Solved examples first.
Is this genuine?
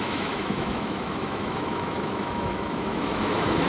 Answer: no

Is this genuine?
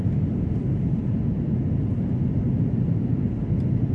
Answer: yes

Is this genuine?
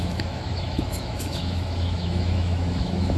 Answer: no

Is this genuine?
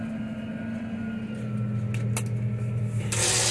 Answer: yes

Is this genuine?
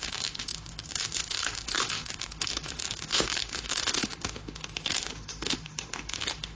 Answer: no